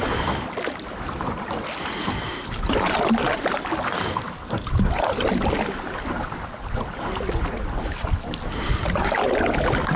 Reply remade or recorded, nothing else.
recorded